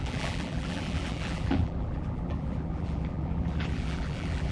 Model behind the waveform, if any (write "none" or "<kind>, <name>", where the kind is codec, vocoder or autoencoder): vocoder, BigVGAN v2